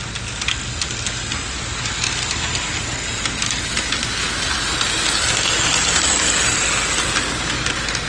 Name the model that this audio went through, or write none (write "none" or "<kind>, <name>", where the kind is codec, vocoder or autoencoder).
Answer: none